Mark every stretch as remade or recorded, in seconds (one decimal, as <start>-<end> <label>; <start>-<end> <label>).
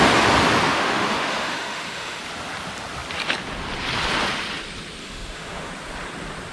0.0-0.7 recorded; 0.7-2.2 remade; 2.2-5.0 recorded; 5.0-5.7 remade; 5.7-6.5 recorded